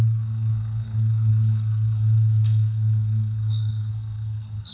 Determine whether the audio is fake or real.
fake